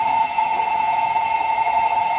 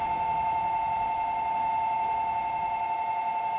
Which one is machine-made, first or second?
first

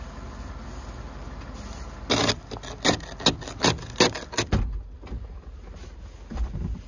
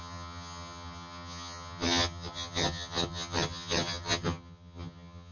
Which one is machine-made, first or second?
second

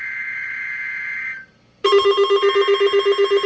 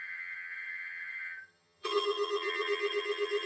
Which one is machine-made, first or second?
second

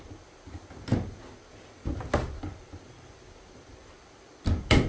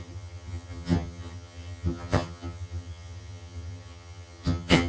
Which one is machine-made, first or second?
second